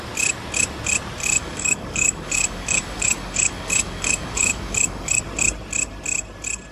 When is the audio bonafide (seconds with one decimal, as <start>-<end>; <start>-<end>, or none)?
0.0-1.2; 5.2-6.7